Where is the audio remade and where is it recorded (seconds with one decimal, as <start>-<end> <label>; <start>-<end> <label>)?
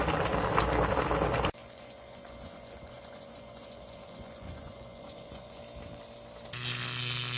0.0-1.6 recorded; 1.6-5.6 remade; 5.6-7.4 recorded